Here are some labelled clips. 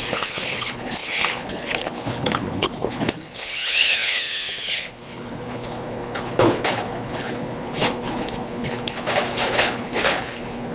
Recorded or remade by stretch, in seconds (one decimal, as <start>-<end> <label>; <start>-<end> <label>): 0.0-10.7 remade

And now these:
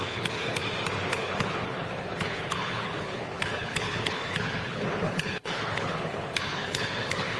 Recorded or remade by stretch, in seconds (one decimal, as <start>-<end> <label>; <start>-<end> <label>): 0.0-0.6 remade; 0.6-1.1 recorded; 1.1-7.4 remade

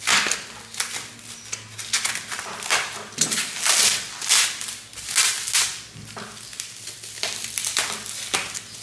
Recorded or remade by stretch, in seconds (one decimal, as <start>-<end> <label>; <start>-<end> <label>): 0.0-8.8 recorded

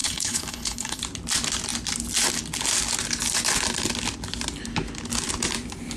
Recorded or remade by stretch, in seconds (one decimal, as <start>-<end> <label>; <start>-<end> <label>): 0.0-1.0 remade; 1.0-6.0 recorded

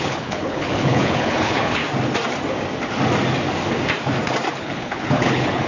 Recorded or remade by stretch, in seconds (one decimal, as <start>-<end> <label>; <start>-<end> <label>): 0.0-1.8 remade; 1.8-4.5 recorded; 4.5-5.7 remade

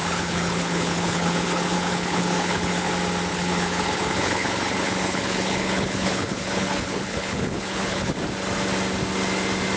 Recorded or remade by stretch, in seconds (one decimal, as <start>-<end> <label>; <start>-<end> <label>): 0.0-2.9 remade; 2.9-3.3 recorded; 3.3-8.1 remade; 8.1-9.8 recorded

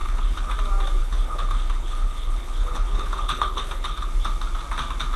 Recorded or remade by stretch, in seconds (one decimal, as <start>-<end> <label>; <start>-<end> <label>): 0.0-0.5 remade; 0.5-1.0 recorded; 1.0-4.1 remade; 4.1-5.2 recorded

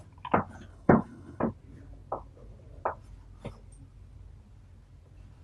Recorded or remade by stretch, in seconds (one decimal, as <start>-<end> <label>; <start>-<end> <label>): 0.0-0.7 recorded; 0.7-1.4 remade; 1.4-5.4 recorded